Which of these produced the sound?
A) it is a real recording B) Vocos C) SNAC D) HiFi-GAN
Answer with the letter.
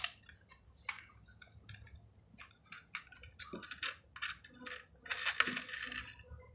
A